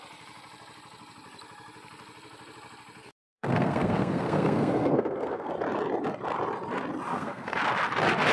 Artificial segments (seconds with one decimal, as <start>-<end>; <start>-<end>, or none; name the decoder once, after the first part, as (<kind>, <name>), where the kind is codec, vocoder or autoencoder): 3.0-5.5 (codec, SNAC); 7.1-7.6